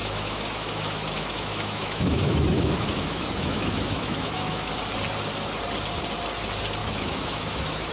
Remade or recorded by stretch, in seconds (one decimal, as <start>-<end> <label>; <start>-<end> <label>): 0.0-4.7 remade; 4.7-6.8 recorded; 6.8-7.9 remade